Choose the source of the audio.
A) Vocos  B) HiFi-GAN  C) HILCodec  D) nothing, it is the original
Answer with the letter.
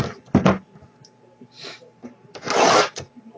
D